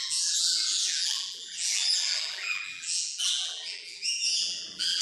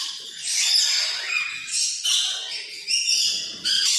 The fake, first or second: first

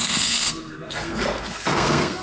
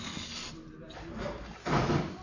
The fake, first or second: first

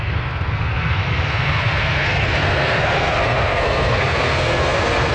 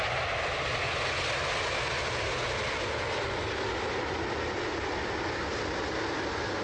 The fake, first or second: first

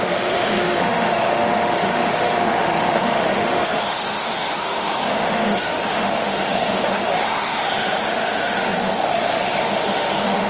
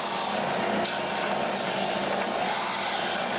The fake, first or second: first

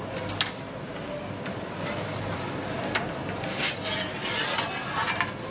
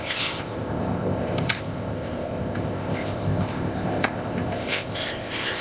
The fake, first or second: second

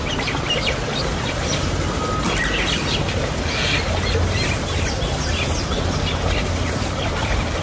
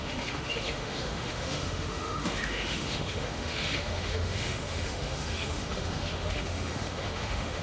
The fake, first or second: second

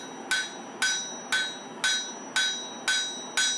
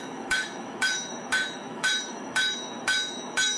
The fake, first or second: second